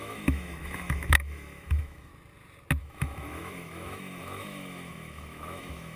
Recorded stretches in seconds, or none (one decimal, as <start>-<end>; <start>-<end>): 2.1-2.8